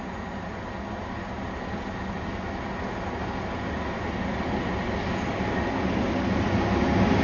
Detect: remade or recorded recorded